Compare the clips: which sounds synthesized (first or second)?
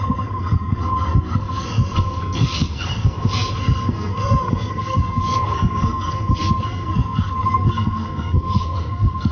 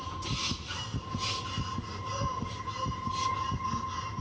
first